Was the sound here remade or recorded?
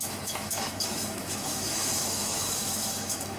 remade